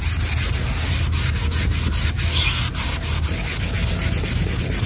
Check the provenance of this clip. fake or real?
real